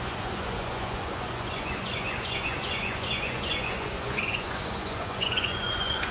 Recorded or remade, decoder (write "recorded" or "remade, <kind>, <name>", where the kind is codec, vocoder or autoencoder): remade, vocoder, Vocos